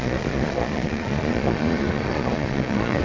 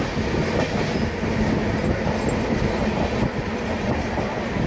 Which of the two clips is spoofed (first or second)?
first